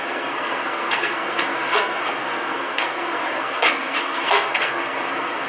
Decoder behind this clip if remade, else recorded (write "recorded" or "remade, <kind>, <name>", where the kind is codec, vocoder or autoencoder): remade, codec, SNAC